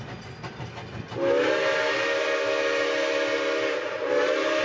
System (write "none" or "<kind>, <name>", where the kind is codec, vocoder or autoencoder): none